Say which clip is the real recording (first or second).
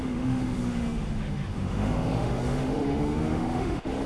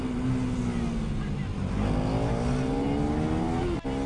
second